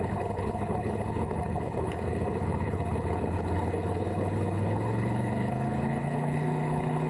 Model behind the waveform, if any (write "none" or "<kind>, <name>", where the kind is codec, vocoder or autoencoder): codec, HILCodec